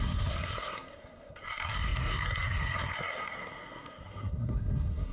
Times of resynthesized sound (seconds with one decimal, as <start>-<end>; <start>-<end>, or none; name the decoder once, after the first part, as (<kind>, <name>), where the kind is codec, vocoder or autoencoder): 0.0-5.1 (codec, SNAC)